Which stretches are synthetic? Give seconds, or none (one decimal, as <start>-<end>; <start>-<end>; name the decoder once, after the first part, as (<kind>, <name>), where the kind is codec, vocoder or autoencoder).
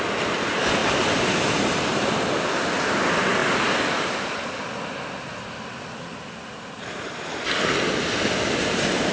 none